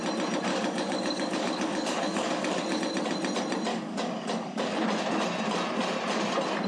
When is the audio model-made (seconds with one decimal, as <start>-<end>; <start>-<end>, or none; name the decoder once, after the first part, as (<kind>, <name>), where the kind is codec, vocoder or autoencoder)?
0.5-2.8 (codec, DAC); 3.7-4.7